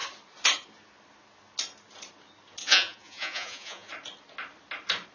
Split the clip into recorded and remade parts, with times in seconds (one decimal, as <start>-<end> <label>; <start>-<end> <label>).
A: 0.0-2.6 recorded; 2.6-3.9 remade; 3.9-5.1 recorded